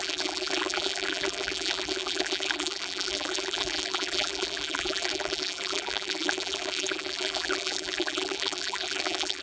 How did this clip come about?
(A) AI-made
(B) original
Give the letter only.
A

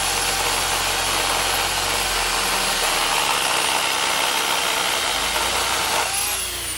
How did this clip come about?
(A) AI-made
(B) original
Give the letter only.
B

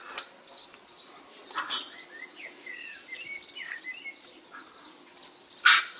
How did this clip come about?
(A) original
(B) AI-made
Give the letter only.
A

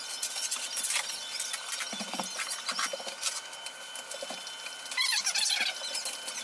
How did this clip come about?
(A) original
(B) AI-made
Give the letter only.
A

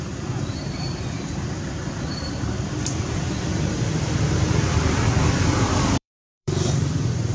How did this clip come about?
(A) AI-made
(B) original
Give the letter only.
A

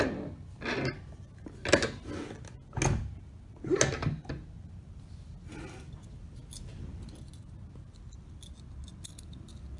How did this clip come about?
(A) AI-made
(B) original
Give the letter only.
B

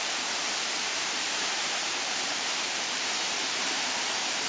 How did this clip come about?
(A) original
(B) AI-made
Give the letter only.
B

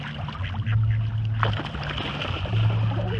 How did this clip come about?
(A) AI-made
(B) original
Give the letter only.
B